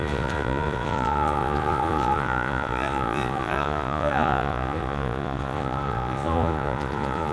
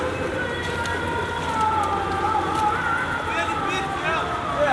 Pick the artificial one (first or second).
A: first